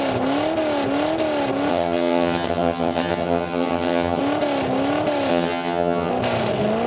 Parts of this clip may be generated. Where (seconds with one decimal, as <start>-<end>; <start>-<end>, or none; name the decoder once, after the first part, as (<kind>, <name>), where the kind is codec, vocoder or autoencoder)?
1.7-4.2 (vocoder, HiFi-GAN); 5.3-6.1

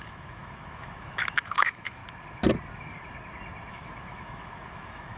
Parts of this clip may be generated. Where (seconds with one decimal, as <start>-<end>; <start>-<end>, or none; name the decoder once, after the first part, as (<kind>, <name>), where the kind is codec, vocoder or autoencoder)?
0.0-2.0 (autoencoder, DAC-VAE); 3.7-5.2

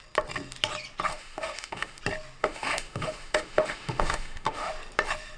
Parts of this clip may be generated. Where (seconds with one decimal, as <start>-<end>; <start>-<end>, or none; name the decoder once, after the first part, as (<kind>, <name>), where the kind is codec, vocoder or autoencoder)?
1.1-2.0 (autoencoder, DAC-VAE); 2.4-4.7

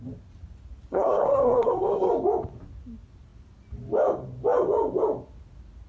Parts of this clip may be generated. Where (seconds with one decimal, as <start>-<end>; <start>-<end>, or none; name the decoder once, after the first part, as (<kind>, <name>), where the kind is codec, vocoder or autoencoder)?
0.9-2.1 (codec, SNAC)

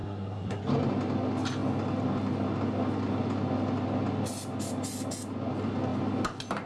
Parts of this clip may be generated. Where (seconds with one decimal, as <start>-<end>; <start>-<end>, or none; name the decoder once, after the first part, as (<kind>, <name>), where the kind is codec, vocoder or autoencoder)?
0.0-0.6 (codec, SNAC)